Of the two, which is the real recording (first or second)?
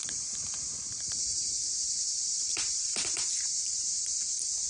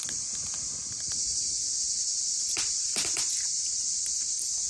second